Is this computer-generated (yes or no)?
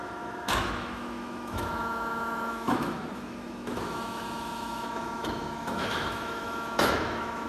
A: yes